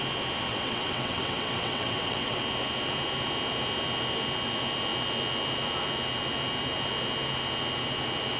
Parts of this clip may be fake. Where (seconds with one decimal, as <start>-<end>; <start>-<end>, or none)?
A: 0.5-2.4